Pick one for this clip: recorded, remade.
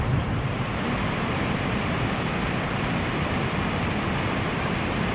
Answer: remade